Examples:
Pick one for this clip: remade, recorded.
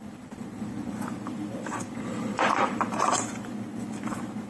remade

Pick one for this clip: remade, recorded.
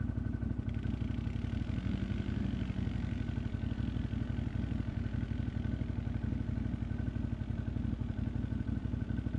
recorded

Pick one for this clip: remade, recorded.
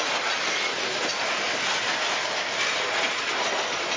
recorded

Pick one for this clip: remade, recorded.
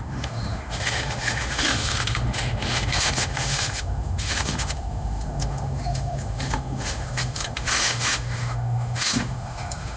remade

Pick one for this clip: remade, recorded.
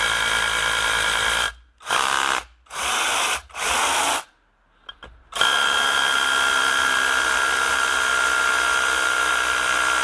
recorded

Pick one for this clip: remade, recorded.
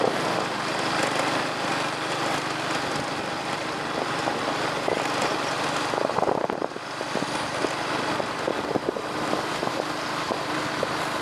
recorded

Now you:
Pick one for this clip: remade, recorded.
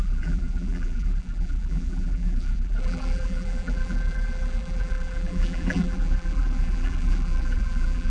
remade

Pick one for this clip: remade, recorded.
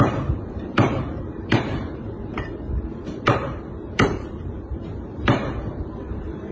remade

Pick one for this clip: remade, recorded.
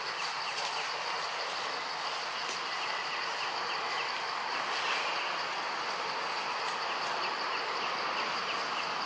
recorded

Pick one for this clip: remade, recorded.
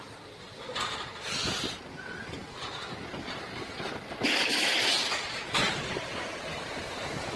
recorded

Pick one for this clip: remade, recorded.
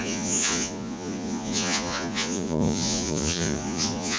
remade